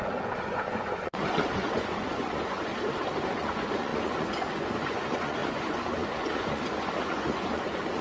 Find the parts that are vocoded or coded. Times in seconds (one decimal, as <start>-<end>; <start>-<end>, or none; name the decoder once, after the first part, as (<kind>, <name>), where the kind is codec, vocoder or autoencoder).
0.0-2.7 (vocoder, Vocos); 3.3-8.0